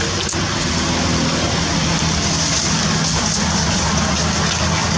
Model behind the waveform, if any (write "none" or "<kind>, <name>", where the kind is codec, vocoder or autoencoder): none